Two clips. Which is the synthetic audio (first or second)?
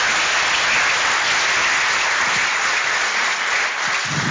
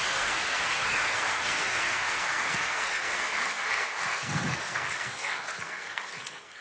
second